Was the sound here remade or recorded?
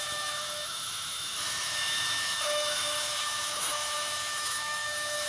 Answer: remade